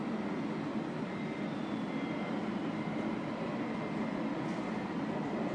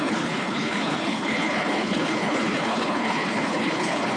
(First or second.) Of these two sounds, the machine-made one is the second